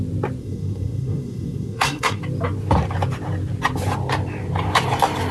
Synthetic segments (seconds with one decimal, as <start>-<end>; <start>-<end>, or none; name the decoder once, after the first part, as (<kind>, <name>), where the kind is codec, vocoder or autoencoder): 0.4-2.2 (codec, SNAC)

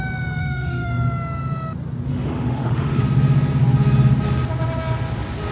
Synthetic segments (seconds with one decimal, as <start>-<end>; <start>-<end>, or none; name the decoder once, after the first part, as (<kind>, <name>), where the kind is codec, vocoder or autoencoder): 0.4-0.9 (autoencoder, DAC-VAE); 2.1-3.0

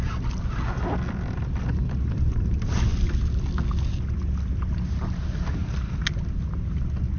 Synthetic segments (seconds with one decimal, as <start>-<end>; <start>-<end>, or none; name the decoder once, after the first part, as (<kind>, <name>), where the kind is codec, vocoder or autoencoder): none

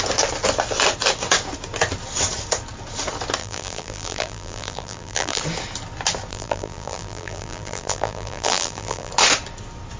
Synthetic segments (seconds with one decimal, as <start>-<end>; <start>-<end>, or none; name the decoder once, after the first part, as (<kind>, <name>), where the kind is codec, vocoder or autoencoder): 3.4-5.4 (vocoder, BigVGAN v2); 6.3-9.1

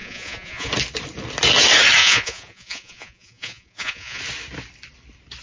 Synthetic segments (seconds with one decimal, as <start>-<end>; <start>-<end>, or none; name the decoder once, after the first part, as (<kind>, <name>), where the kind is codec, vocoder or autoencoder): 0.0-0.7 (vocoder, Vocos); 2.0-4.2